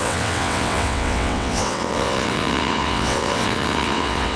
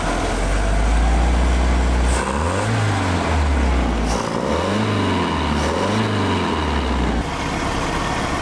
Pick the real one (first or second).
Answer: second